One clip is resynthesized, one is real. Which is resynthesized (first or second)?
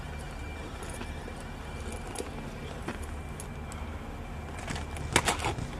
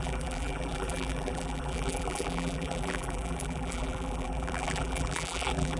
second